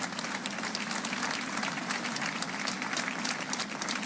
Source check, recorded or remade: recorded